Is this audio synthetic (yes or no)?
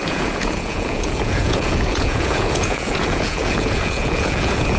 yes